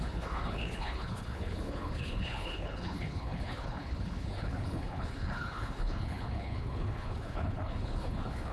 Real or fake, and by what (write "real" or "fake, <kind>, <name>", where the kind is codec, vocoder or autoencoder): fake, codec, HILCodec